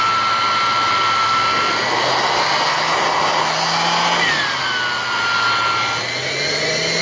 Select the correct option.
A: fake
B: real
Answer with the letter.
B